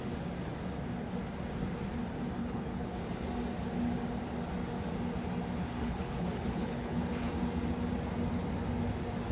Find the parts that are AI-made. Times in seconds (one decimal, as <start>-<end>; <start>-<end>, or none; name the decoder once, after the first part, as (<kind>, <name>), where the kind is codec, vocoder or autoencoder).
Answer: 2.4-3.0 (codec, HILCodec); 5.8-7.3